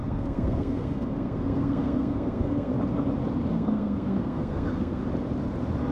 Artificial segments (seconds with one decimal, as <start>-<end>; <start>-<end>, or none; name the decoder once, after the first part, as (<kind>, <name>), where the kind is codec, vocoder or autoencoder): 0.0-2.7 (codec, SNAC); 3.5-5.0